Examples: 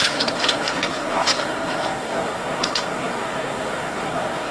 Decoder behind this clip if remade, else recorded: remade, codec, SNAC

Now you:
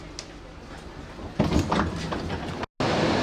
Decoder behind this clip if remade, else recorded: recorded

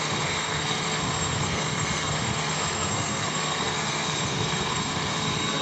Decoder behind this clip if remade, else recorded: remade, codec, SNAC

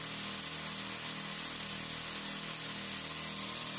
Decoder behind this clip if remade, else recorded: recorded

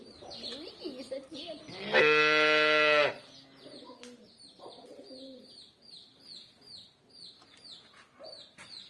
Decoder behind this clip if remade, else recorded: recorded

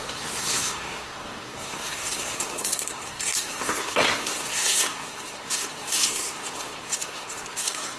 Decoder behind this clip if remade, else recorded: remade, codec, SNAC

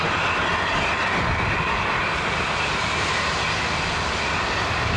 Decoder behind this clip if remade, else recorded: recorded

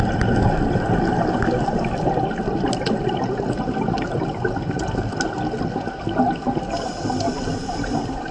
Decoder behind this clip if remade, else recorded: recorded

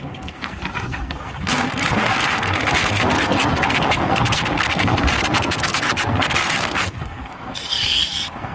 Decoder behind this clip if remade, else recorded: remade, codec, SNAC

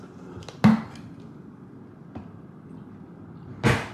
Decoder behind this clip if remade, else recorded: recorded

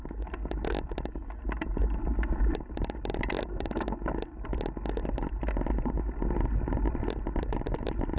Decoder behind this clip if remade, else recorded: recorded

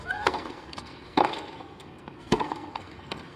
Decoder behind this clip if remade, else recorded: remade, codec, SNAC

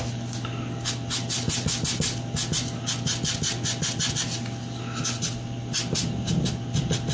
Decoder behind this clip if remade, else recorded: recorded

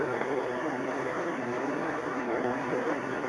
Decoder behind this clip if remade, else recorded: remade, codec, SNAC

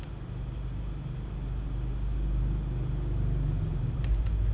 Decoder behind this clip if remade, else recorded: recorded